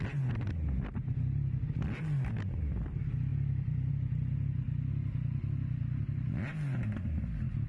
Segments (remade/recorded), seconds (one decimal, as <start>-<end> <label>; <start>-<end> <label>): 0.0-7.7 recorded